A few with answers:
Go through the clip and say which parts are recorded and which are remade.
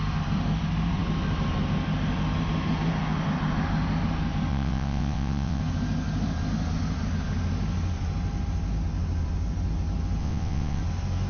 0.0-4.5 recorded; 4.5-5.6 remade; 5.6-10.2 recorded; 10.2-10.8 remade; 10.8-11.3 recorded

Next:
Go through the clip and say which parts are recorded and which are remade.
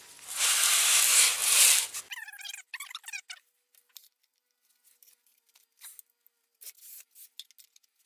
0.0-1.4 recorded; 1.4-2.0 remade; 2.0-8.1 recorded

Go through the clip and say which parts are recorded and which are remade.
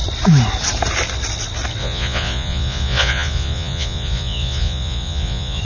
0.0-1.8 recorded; 1.8-5.6 remade